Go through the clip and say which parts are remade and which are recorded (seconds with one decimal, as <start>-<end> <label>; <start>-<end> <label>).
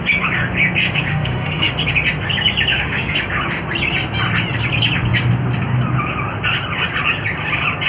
0.0-1.1 recorded; 1.1-1.7 remade; 1.7-2.7 recorded; 2.7-3.2 remade; 3.2-7.9 recorded